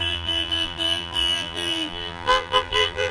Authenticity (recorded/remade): remade